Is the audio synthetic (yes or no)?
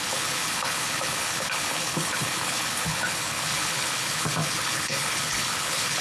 yes